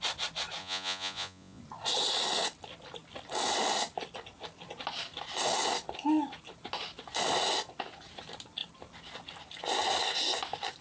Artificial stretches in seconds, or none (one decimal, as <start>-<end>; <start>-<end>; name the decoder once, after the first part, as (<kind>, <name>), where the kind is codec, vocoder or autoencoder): 0.6-1.6 (vocoder, Vocos)